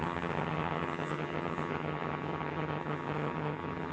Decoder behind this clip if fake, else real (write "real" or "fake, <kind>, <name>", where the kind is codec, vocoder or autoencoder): fake, vocoder, HiFi-GAN